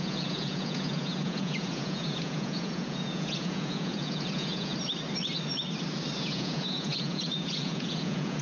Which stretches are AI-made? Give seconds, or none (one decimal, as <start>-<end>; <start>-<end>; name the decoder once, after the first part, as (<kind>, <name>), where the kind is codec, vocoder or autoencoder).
0.0-4.7 (vocoder, Vocos); 6.2-8.4